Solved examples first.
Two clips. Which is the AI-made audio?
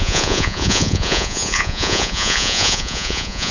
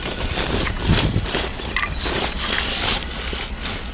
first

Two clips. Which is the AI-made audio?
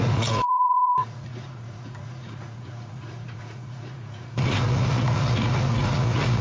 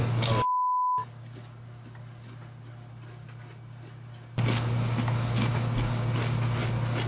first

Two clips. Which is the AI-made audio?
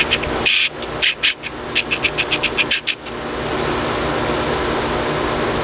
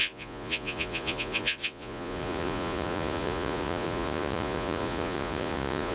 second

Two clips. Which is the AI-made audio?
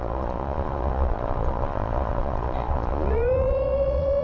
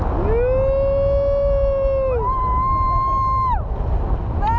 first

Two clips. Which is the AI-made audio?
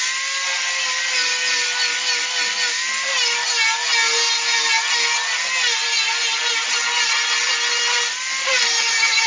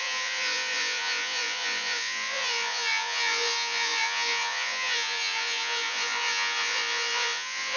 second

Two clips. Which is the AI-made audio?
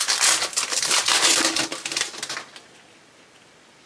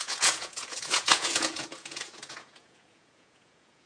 second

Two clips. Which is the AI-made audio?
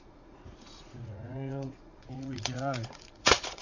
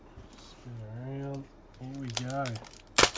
first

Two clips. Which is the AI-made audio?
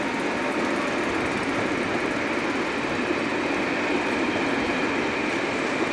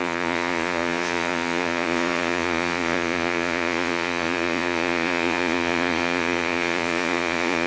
second